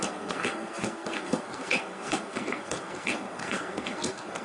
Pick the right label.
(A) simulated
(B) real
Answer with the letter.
A